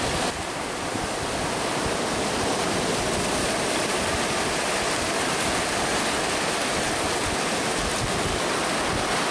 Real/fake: real